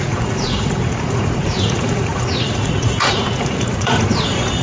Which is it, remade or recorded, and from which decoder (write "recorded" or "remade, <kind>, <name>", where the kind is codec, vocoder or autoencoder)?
remade, vocoder, Vocos